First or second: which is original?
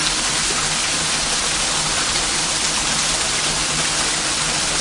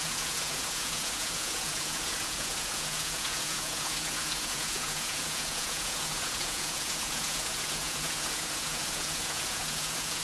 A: first